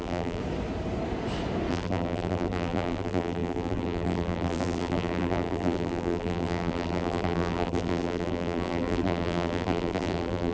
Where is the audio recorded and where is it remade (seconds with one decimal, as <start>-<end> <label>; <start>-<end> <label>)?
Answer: 0.0-0.4 remade; 0.4-1.7 recorded; 1.7-10.5 remade